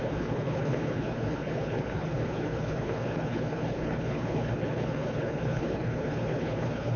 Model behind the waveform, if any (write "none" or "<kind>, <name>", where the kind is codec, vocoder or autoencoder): codec, HILCodec